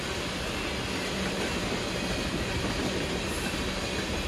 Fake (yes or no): no